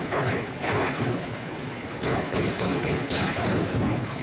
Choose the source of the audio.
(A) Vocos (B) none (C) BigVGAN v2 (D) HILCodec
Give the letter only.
D